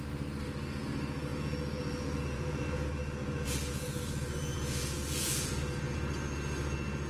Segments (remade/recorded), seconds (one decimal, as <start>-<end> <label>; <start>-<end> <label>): 0.0-1.3 recorded; 1.3-5.6 remade; 5.6-7.1 recorded